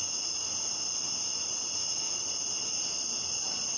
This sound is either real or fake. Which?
real